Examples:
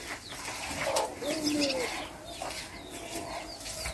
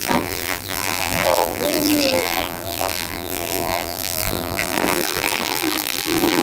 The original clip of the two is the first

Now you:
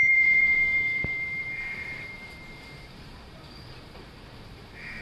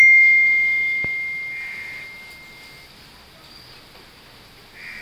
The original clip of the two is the second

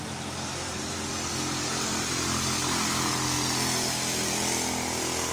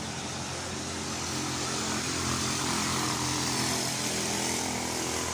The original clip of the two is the first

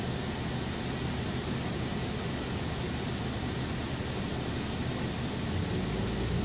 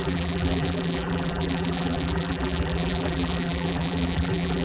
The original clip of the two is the first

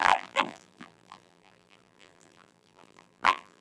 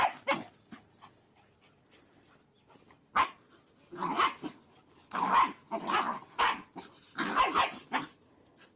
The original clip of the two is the second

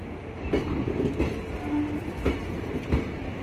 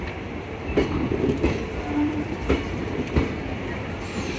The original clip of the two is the first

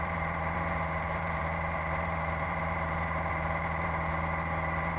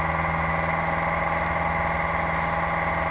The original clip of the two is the second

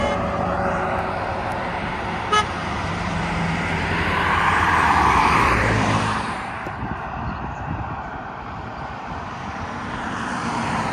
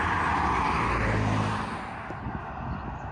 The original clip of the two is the second